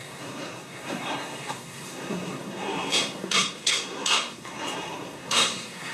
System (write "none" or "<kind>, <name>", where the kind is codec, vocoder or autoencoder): codec, SNAC